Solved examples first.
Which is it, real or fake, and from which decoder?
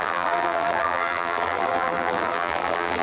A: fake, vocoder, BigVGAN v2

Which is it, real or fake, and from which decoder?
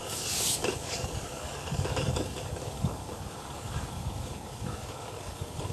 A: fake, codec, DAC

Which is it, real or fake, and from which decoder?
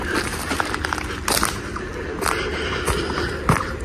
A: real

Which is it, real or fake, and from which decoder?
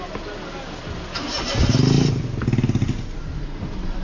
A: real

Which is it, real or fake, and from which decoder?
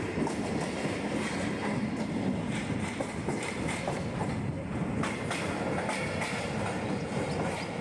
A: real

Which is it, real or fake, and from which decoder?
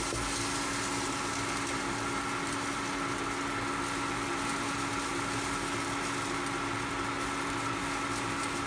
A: real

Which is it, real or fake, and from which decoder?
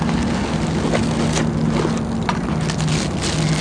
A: real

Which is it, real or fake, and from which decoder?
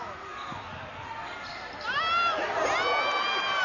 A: real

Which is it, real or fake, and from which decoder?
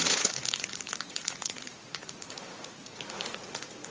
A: fake, vocoder, Vocos